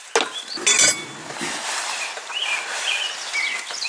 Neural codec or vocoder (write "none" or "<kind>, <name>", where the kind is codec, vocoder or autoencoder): none